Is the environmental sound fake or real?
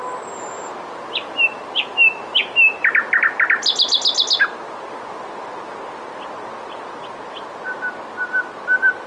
real